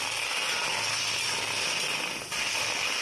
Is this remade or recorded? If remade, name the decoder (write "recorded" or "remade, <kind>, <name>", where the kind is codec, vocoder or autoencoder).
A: recorded